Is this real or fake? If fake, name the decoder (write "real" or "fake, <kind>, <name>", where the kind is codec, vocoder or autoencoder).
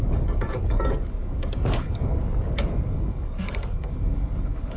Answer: fake, codec, DAC